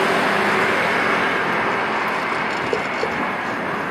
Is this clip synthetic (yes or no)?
no